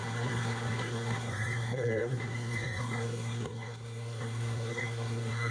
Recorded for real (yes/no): no